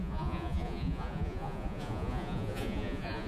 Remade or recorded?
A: remade